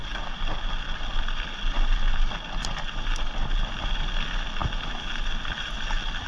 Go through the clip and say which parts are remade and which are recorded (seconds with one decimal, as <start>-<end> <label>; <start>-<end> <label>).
0.0-6.3 recorded